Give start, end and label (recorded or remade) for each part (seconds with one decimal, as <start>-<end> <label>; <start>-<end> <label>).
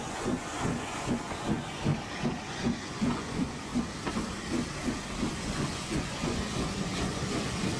0.0-1.9 remade; 1.9-2.5 recorded; 2.5-3.7 remade; 3.7-5.3 recorded; 5.3-7.8 remade